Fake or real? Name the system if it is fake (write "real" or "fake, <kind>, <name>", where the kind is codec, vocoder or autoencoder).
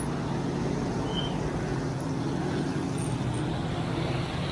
real